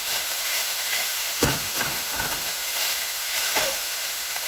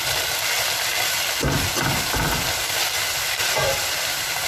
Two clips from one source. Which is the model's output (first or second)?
first